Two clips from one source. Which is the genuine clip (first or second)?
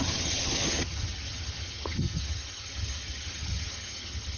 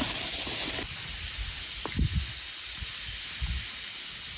second